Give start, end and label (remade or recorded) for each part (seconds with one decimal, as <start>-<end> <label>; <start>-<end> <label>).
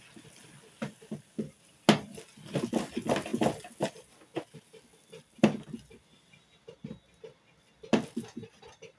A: 0.0-9.0 recorded